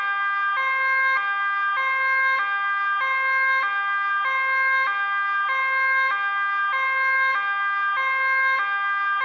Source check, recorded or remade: recorded